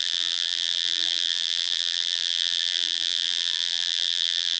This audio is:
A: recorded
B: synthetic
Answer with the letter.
B